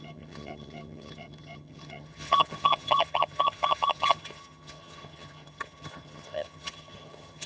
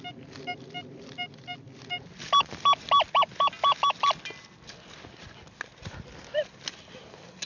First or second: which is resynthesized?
first